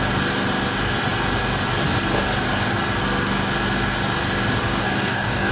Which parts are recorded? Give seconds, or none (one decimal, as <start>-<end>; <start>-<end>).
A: 0.0-4.8

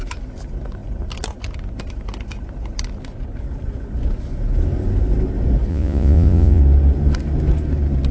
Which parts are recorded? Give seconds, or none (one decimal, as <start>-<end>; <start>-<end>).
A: 0.0-5.7; 6.6-8.1